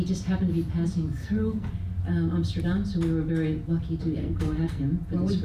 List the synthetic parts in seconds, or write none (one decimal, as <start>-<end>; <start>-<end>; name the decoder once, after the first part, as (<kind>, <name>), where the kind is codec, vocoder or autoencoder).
1.2-1.7 (codec, SNAC); 4.2-4.8